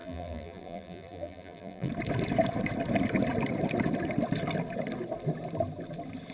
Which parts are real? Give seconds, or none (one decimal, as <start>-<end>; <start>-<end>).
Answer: 1.9-6.3